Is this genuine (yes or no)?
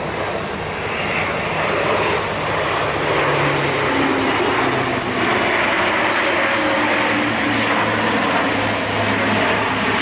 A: yes